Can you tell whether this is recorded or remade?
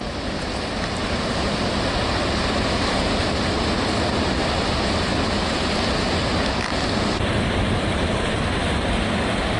recorded